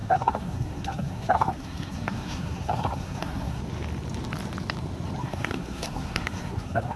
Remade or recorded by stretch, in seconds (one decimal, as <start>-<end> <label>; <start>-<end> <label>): 0.0-3.6 remade; 3.6-5.2 recorded; 5.2-7.0 remade